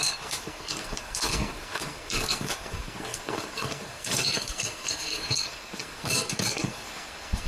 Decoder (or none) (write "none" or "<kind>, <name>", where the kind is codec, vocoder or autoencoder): codec, SNAC